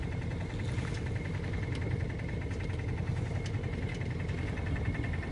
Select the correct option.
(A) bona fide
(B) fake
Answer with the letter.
A